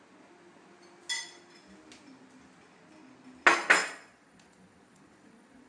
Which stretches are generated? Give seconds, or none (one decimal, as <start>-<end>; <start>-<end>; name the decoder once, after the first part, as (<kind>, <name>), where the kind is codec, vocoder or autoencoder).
3.8-5.7 (vocoder, Vocos)